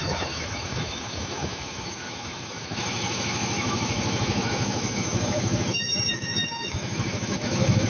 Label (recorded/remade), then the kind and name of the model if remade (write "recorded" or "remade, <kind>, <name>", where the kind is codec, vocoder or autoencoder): remade, autoencoder, DAC-VAE